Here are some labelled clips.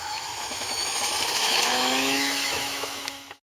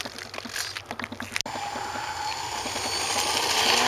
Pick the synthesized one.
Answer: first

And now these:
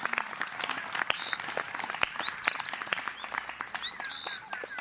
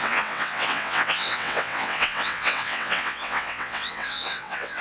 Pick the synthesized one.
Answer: second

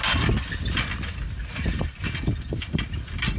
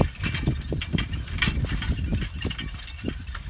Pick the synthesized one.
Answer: second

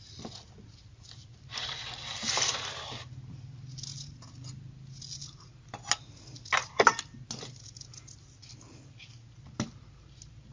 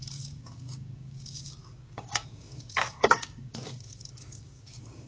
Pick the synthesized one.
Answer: second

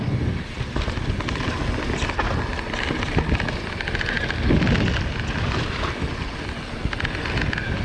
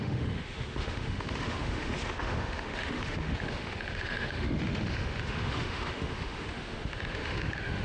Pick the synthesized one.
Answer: second